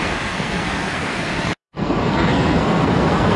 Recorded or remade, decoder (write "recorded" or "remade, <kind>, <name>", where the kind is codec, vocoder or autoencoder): remade, codec, SNAC